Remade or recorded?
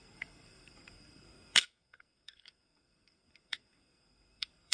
remade